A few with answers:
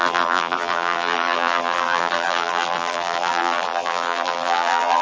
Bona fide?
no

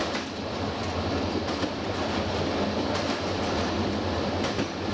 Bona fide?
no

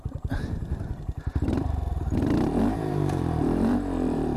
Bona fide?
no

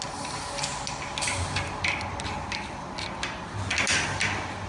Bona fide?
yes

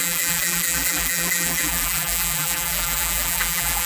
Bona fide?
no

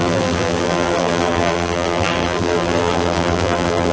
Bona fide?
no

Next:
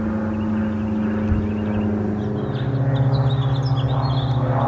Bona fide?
yes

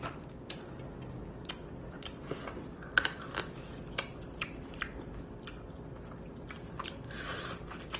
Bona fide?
yes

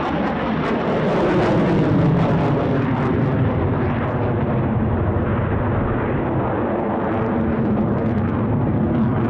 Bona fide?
yes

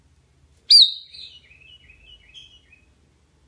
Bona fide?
yes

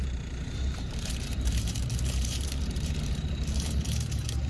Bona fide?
no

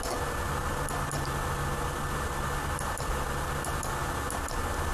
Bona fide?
yes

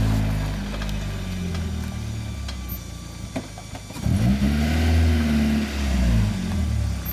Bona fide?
yes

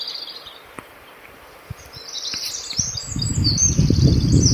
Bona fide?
yes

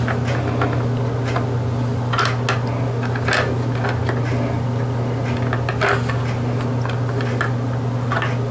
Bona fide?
yes